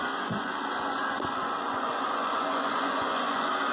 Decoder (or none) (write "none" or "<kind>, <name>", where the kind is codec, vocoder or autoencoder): vocoder, Vocos